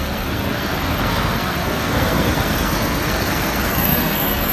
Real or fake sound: fake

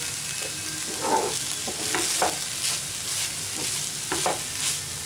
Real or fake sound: real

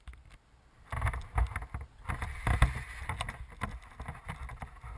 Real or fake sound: real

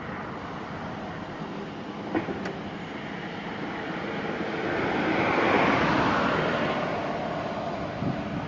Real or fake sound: real